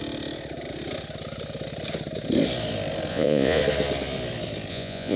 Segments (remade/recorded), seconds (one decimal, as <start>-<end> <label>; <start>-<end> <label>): 0.0-3.1 recorded; 3.1-3.6 remade; 3.6-4.7 recorded; 4.7-5.2 remade